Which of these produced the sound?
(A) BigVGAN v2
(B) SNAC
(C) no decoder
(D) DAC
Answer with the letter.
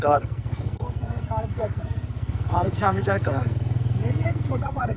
B